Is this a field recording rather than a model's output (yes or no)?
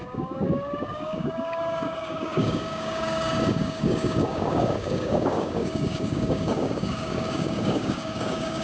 no